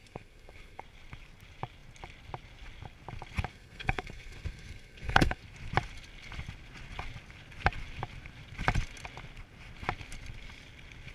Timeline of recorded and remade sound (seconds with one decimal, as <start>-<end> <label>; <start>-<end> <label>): 0.0-0.8 remade; 0.8-3.5 recorded; 3.5-5.4 remade; 5.4-11.1 recorded